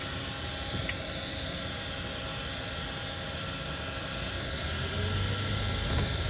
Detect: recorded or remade recorded